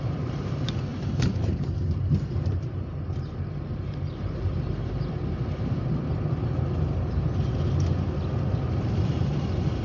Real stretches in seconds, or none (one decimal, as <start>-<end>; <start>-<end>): 5.8-8.6